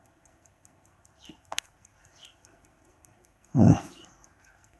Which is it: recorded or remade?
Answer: remade